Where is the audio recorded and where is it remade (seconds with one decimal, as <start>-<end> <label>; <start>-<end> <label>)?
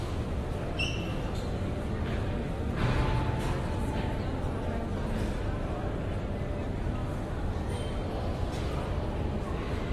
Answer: 0.0-9.9 recorded